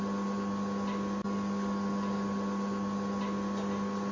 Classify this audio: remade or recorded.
recorded